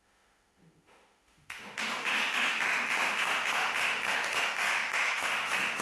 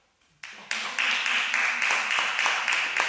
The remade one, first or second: first